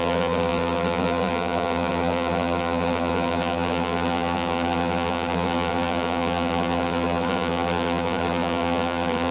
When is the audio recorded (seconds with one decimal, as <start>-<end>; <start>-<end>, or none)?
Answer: none